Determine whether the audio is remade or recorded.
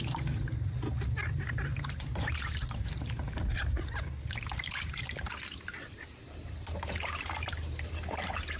remade